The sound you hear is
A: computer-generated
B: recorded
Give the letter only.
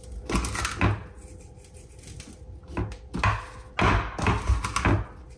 B